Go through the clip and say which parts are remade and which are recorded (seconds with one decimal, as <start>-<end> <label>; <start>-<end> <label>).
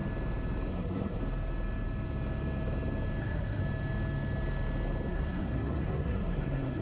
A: 0.0-0.7 recorded; 0.7-1.2 remade; 1.2-3.2 recorded; 3.2-3.6 remade; 3.6-5.1 recorded; 5.1-6.8 remade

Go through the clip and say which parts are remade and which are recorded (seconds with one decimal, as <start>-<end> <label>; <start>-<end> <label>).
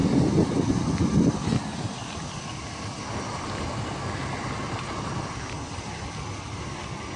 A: 0.0-7.2 recorded